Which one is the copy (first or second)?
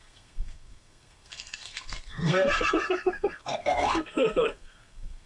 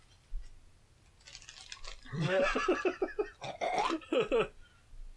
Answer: first